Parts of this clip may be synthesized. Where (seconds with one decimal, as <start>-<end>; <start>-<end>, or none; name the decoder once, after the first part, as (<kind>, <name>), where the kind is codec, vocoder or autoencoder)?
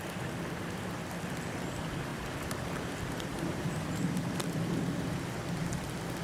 2.1-4.3 (vocoder, BigVGAN v2)